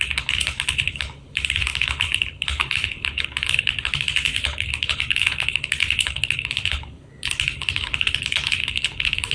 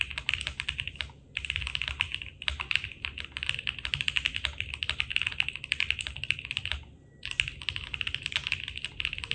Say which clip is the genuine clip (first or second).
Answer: second